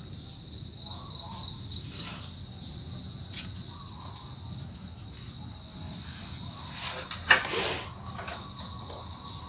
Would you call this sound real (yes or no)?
yes